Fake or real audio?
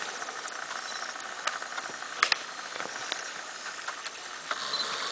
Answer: real